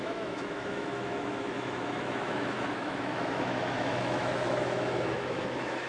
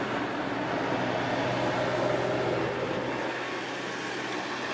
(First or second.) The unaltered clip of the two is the second